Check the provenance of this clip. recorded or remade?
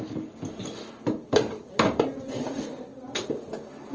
recorded